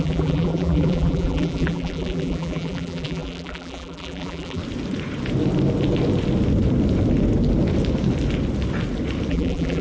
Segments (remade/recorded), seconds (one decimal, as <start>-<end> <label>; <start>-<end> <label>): 0.0-4.6 remade; 4.6-9.3 recorded; 9.3-9.8 remade